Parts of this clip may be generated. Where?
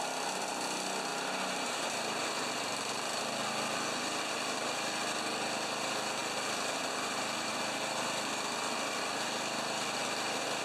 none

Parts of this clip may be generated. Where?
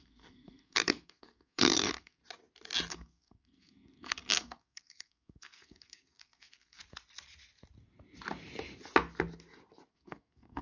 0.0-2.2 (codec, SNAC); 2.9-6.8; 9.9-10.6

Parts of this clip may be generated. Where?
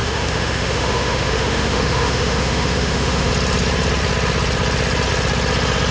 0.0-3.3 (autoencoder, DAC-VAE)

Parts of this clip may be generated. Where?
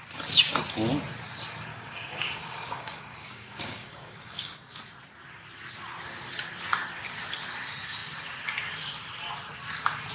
1.7-4.7 (codec, DAC)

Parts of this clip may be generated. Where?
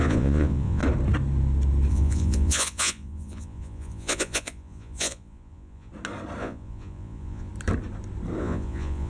0.0-0.8 (vocoder, Vocos); 1.9-5.9; 6.4-7.5; 8.4-9.1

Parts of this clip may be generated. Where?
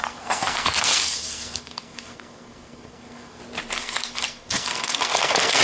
0.0-3.4 (codec, SNAC); 3.8-5.6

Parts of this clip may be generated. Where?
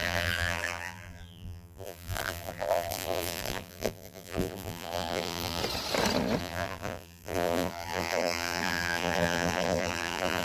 0.0-5.6 (vocoder, BigVGAN v2); 6.4-10.4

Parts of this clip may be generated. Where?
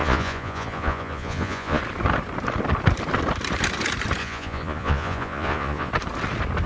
0.0-1.8 (vocoder, Vocos); 4.2-5.9